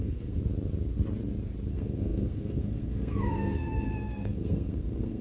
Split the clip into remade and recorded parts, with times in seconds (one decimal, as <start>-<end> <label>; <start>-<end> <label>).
0.0-0.4 remade; 0.4-1.7 recorded; 1.7-5.2 remade